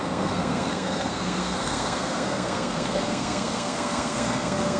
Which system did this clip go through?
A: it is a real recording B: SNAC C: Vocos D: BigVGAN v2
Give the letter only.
B